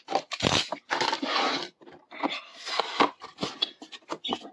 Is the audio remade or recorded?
recorded